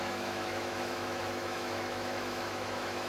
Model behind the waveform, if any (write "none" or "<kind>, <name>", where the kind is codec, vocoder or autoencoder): autoencoder, DAC-VAE